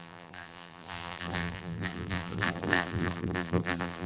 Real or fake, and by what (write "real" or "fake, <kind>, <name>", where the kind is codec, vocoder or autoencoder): fake, vocoder, BigVGAN v2